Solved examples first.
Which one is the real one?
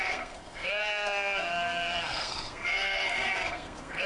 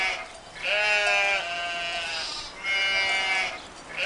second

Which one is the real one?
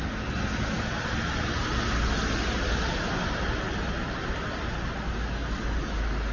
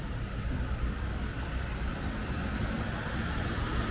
first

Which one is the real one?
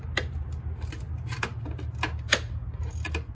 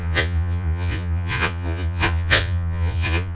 first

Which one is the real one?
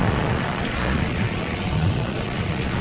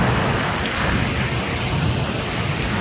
second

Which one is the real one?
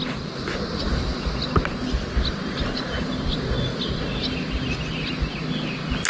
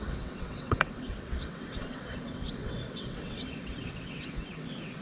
first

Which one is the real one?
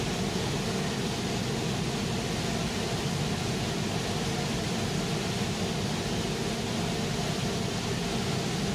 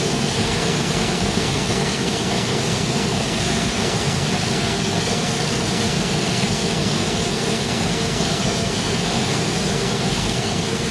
first